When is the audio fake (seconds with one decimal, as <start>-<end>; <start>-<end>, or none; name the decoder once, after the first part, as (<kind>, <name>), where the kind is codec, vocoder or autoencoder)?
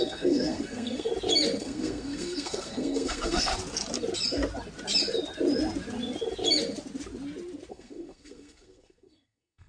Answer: 0.0-1.1 (codec, SNAC); 1.6-3.5; 7.7-9.7